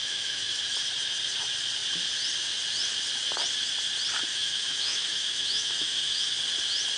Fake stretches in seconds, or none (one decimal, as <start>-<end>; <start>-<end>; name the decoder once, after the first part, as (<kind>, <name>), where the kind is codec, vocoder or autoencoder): 0.0-0.6 (autoencoder, DAC-VAE); 4.3-6.3